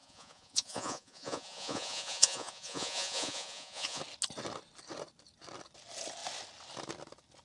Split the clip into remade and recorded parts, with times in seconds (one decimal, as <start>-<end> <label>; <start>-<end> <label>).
0.0-4.0 remade; 4.0-7.4 recorded